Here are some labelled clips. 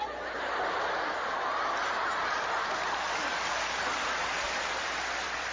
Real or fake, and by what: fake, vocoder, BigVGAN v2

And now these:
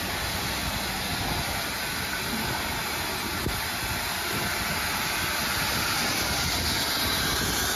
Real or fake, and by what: real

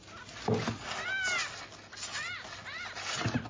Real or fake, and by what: real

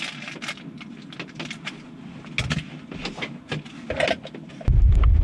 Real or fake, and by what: real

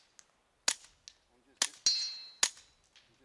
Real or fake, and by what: real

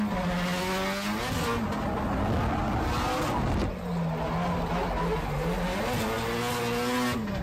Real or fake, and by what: real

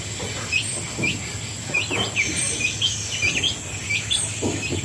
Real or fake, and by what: real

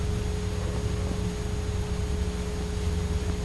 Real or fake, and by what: real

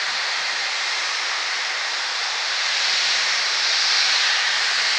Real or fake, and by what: fake, vocoder, BigVGAN v2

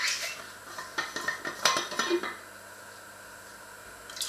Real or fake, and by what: real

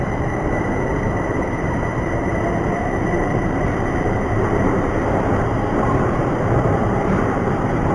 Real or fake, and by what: fake, vocoder, BigVGAN v2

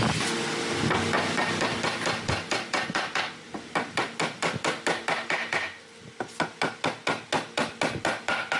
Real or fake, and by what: real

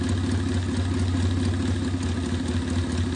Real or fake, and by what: real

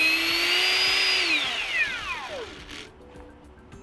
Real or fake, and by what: real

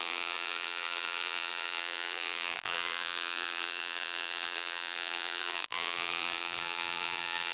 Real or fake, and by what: fake, vocoder, BigVGAN v2